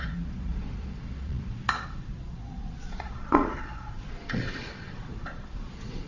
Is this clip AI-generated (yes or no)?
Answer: yes